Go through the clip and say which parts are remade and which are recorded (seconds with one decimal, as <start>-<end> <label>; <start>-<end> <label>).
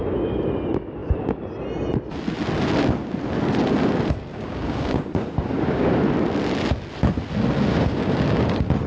0.0-4.3 recorded; 4.3-5.9 remade; 5.9-7.7 recorded; 7.7-8.9 remade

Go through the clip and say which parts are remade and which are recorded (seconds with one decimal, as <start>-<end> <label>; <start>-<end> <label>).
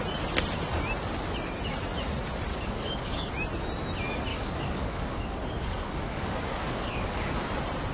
0.0-2.5 recorded; 2.5-3.3 remade; 3.3-4.3 recorded; 4.3-7.3 remade; 7.3-7.9 recorded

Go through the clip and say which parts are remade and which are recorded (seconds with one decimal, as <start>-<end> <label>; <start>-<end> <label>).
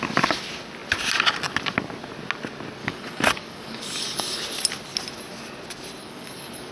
0.0-2.8 recorded; 2.8-4.4 remade; 4.4-6.0 recorded; 6.0-6.7 remade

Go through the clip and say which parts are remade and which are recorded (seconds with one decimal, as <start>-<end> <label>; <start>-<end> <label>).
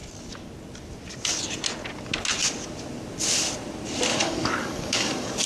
0.0-4.1 recorded; 4.1-5.5 remade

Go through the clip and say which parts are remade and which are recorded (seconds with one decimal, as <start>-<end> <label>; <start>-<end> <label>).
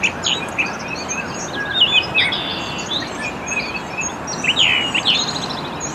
0.0-5.9 recorded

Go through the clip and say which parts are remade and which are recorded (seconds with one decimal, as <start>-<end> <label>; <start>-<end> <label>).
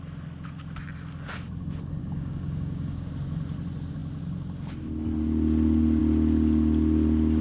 0.0-2.0 recorded; 2.0-3.1 remade; 3.1-7.4 recorded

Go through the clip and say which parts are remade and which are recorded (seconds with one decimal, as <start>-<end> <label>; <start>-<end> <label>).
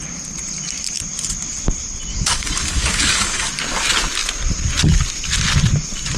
0.0-2.1 recorded; 2.1-3.5 remade; 3.5-6.2 recorded